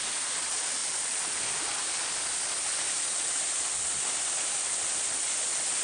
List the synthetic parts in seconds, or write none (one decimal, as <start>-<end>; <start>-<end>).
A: none

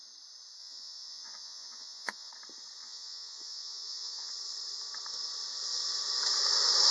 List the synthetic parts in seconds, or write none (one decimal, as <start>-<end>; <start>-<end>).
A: 0.6-2.3; 2.8-4.3